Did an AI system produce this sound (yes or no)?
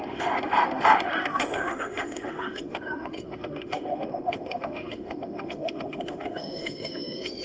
yes